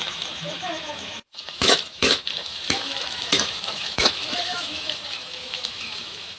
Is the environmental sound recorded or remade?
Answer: remade